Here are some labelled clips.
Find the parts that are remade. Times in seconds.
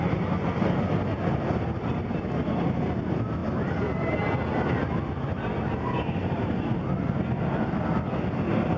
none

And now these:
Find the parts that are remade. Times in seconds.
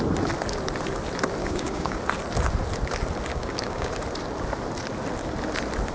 1.4-2.0 (codec, DAC); 3.3-3.9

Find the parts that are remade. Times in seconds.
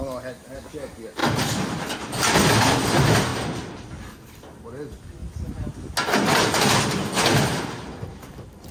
1.2-2.2 (vocoder, BigVGAN v2); 3.3-4.3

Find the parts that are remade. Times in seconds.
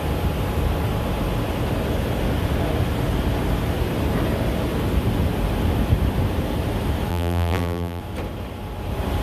7.1-8.0 (vocoder, BigVGAN v2)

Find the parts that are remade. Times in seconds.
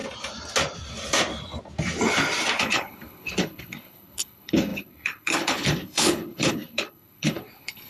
2.6-7.9 (codec, HILCodec)